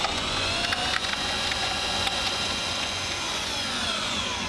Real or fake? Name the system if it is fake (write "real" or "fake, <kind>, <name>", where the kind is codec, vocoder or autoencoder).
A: fake, vocoder, Vocos